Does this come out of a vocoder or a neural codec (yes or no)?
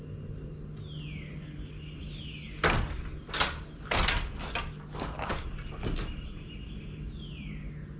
no